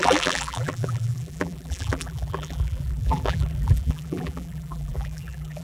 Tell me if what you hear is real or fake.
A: fake